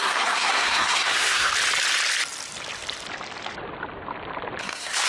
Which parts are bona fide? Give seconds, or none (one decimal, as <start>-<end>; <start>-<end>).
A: 1.5-4.6